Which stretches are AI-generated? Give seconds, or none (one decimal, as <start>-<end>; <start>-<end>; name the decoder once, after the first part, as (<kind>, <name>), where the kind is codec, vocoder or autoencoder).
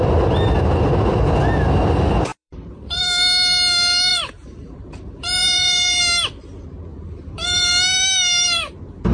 2.3-3.0 (vocoder, BigVGAN v2); 4.1-6.0; 6.9-7.7